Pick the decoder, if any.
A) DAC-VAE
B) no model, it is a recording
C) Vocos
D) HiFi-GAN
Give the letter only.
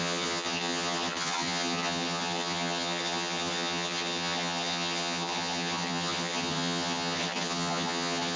D